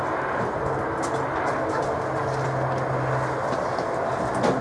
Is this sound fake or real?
real